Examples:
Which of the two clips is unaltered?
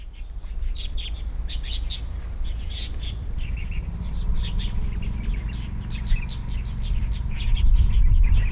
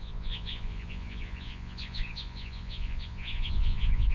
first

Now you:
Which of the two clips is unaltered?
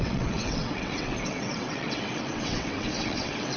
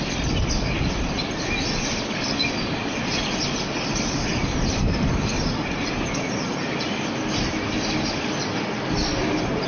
second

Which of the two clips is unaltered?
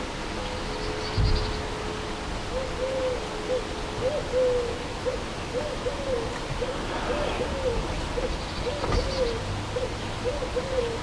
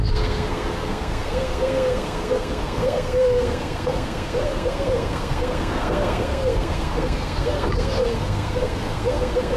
first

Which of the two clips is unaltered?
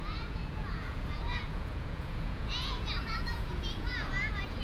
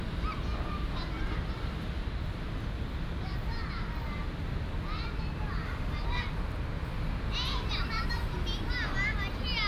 second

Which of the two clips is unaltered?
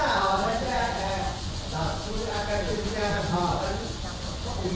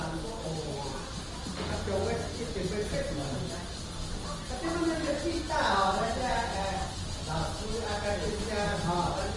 second